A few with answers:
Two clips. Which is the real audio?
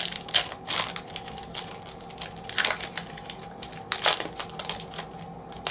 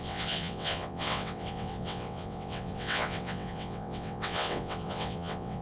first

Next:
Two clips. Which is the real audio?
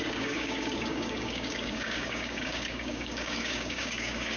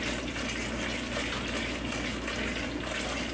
second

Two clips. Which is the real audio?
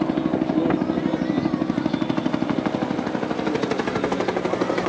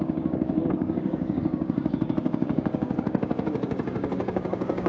first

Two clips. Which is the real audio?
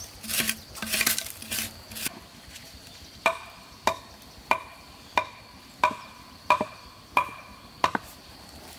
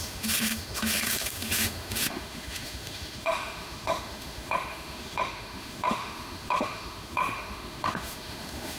first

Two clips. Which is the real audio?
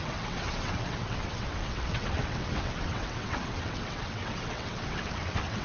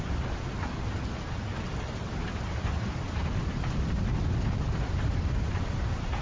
second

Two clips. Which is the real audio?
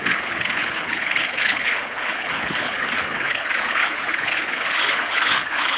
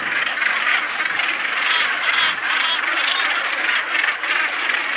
second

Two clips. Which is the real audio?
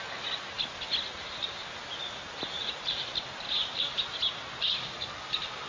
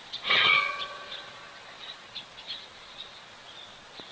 first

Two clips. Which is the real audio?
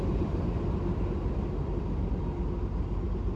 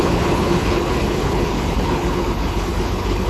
first